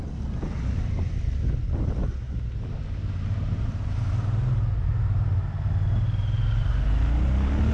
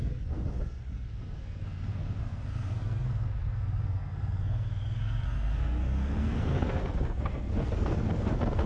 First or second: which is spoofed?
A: second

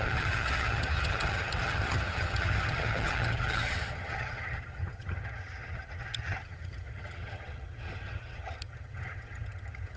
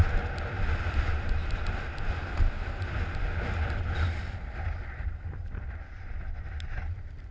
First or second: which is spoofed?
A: first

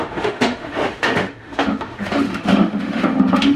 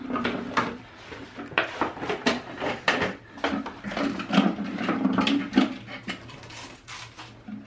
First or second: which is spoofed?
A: first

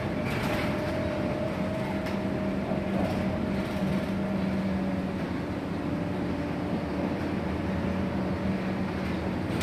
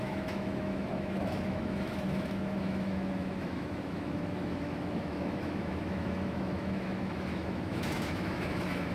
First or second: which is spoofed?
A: second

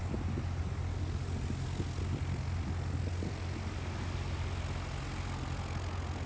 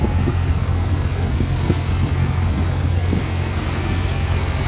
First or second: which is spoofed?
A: second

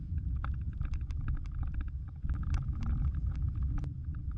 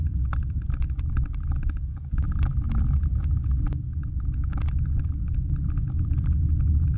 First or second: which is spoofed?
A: first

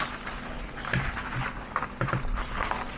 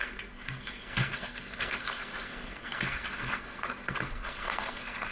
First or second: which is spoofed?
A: second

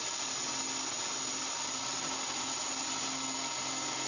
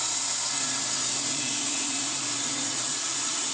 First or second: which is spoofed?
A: second